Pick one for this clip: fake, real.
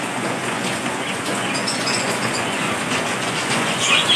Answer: fake